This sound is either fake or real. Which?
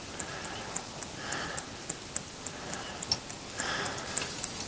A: real